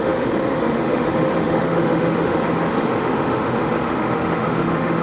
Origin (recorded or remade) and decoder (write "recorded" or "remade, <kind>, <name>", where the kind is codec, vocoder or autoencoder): remade, autoencoder, DAC-VAE